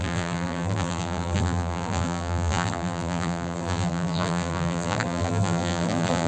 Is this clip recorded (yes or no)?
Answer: no